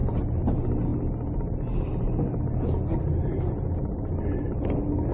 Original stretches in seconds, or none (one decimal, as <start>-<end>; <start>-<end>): 0.0-5.1